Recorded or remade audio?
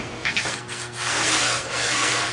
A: remade